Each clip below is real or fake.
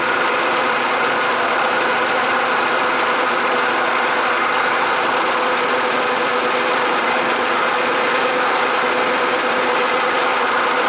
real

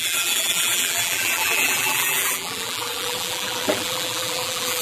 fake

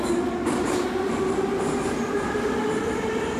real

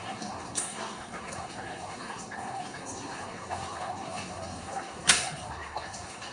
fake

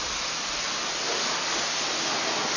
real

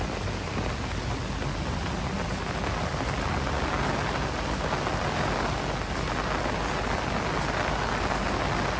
real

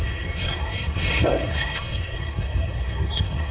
fake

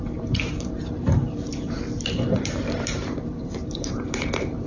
fake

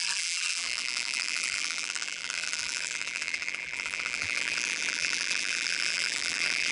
fake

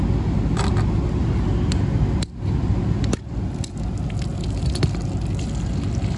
real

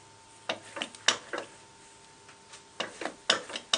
real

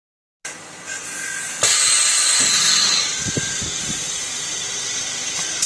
real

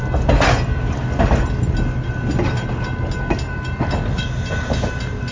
real